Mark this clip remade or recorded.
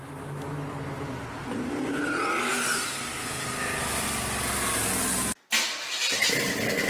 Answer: recorded